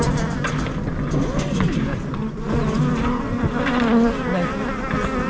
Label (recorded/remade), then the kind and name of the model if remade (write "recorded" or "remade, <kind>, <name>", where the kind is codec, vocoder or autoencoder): recorded